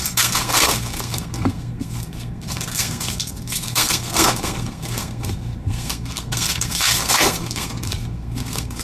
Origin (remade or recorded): remade